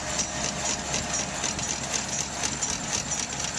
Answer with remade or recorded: recorded